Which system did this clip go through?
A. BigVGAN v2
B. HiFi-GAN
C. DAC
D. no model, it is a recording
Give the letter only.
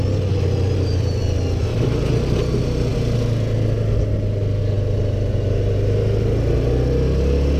D